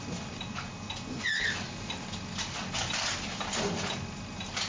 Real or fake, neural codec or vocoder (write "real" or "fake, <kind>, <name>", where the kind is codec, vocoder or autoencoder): real